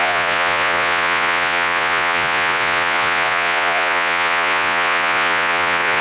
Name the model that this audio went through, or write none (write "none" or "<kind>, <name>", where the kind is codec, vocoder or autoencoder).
vocoder, Vocos